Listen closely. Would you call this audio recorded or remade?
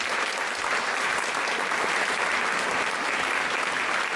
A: recorded